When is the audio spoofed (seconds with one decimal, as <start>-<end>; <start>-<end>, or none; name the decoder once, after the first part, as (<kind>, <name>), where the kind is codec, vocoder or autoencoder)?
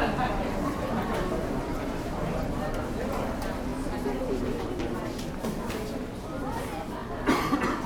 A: none